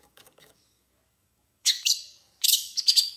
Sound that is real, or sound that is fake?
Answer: fake